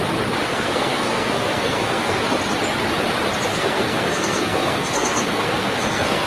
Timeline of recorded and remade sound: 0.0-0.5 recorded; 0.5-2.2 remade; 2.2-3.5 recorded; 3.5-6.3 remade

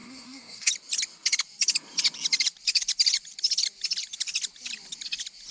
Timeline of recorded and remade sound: 0.0-0.7 remade; 0.7-5.5 recorded

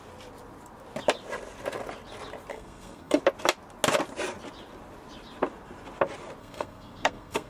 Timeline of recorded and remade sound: 0.0-2.5 recorded; 2.5-3.2 remade; 3.2-6.4 recorded; 6.4-7.5 remade

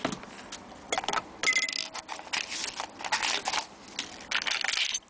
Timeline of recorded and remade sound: 0.0-5.1 recorded

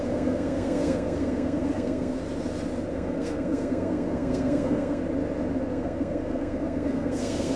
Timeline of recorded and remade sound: 0.0-2.2 remade; 2.2-2.9 recorded; 2.9-5.0 remade; 5.0-5.7 recorded; 5.7-7.6 remade